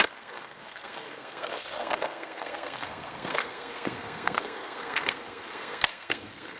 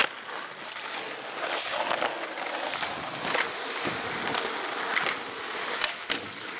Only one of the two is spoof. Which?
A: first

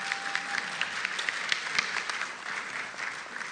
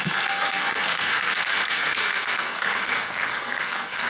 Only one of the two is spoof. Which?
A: second